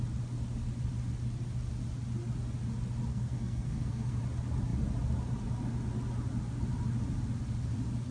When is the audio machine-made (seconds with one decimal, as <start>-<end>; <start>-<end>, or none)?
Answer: 3.1-4.2